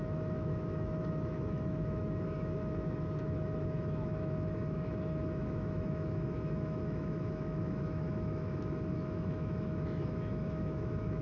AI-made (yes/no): yes